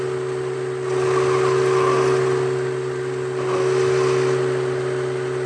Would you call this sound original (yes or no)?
yes